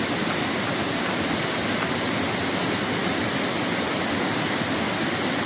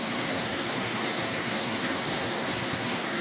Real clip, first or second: first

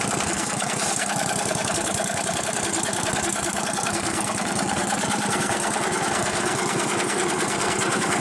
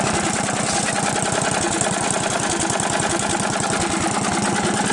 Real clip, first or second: second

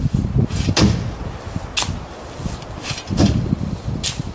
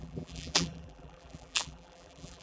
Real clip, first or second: first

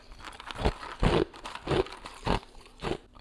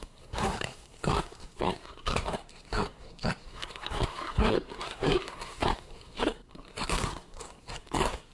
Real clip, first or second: first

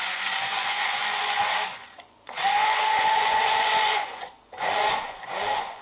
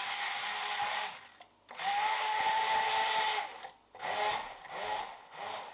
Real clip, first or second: second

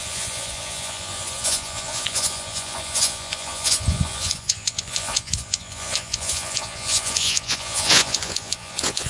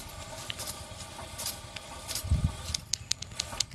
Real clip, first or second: second